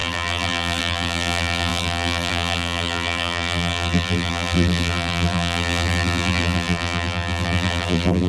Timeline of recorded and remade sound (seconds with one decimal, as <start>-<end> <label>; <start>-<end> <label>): 0.0-8.3 remade